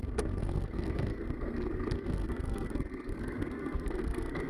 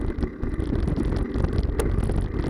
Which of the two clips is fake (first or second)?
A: first